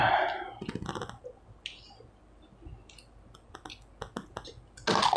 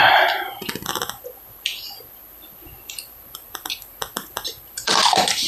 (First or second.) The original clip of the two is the first